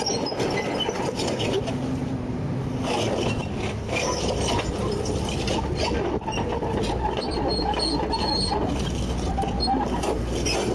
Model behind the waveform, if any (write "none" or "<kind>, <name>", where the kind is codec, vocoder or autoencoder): none